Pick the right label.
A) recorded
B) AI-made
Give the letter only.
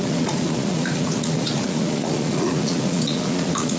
B